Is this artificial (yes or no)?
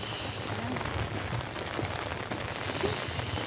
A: no